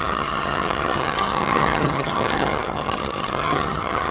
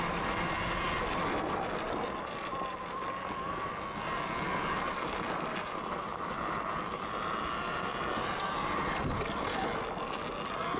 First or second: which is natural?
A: second